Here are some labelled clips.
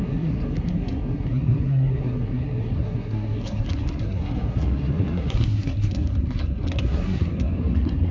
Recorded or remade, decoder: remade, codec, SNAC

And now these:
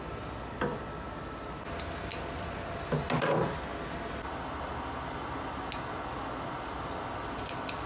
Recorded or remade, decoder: recorded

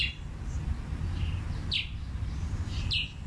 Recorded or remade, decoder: recorded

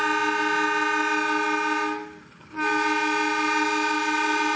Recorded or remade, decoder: recorded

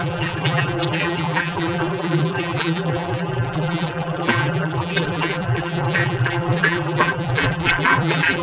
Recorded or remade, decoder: remade, vocoder, BigVGAN v2